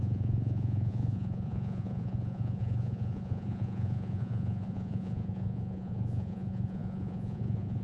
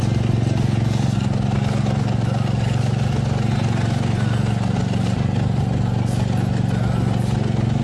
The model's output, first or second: first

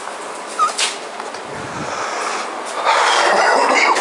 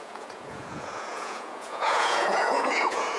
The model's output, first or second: second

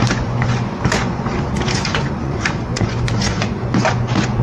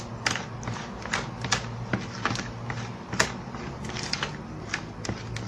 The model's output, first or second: first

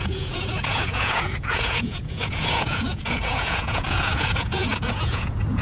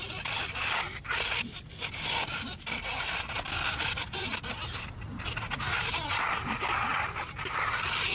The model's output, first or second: first